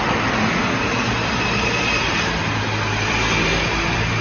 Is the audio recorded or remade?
recorded